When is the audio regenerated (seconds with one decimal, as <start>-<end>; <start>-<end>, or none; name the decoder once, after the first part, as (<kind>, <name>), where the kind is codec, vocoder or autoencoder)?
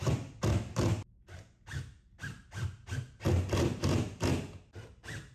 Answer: none